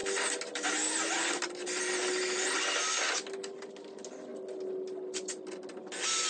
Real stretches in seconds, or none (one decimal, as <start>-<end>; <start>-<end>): 0.0-6.3